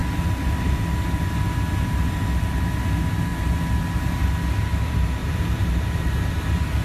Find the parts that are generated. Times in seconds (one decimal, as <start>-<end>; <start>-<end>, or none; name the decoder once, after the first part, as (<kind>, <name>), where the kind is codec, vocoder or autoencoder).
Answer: 5.2-6.0 (vocoder, BigVGAN v2)